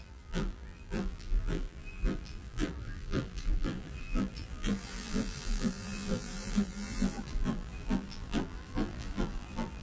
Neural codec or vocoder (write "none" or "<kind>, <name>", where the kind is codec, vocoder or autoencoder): vocoder, BigVGAN v2